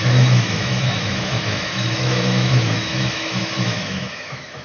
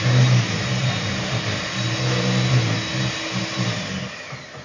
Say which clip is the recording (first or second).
second